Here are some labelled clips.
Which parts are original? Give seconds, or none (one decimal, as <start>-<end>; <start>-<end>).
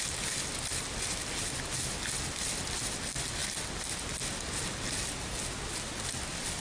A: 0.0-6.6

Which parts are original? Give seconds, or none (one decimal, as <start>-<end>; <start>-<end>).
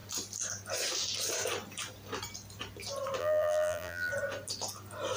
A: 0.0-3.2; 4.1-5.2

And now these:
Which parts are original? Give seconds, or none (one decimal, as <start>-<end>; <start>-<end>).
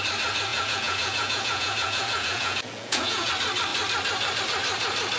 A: 0.0-0.5; 3.3-5.2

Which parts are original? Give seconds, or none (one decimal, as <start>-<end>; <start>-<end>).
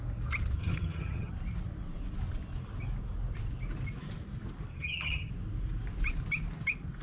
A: 0.0-0.6; 1.3-4.7; 5.3-7.0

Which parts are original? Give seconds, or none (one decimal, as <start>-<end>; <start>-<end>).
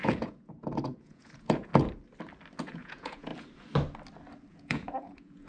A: 1.7-2.6; 3.3-4.5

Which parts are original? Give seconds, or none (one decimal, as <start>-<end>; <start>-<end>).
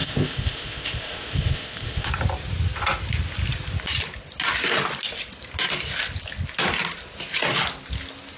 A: 2.1-8.4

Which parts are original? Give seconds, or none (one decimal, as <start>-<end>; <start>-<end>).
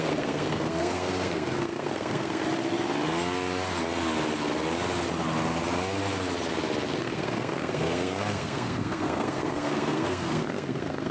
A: 2.4-6.9